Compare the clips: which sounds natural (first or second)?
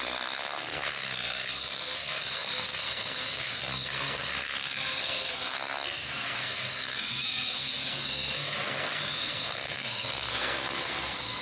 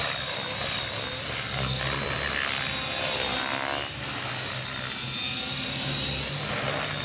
second